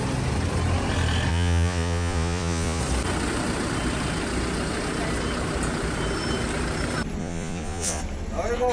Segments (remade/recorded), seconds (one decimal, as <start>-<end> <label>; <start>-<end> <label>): 0.0-1.3 recorded; 1.3-2.8 remade; 2.8-7.2 recorded; 7.2-8.0 remade; 8.0-8.7 recorded